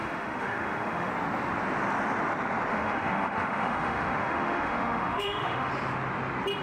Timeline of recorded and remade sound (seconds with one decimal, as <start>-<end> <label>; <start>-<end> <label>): 0.0-1.1 remade; 1.1-2.7 recorded; 2.7-5.7 remade; 5.7-6.6 recorded